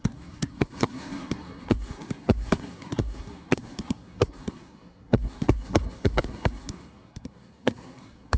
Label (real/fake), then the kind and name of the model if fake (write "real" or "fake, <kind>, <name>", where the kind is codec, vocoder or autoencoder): fake, codec, SNAC